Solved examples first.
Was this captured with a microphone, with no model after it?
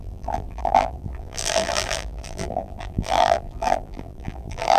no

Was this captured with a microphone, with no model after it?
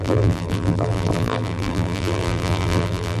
no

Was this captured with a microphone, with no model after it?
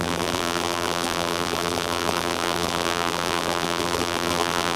no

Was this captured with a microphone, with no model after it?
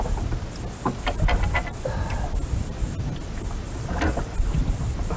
yes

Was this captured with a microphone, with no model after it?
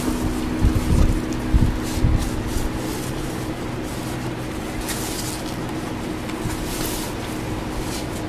yes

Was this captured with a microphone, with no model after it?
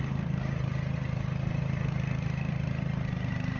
yes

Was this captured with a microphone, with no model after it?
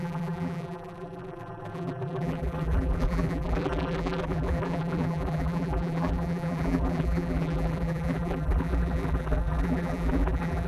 no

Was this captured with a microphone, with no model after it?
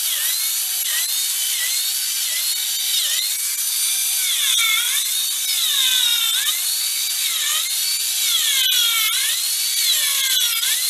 yes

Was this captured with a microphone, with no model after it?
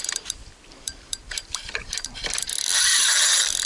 no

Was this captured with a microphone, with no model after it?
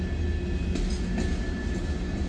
yes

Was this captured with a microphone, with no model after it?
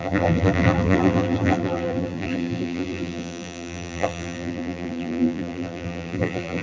no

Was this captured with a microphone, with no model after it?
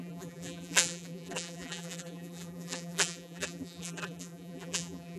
no